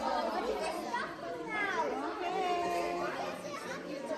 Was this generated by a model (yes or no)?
yes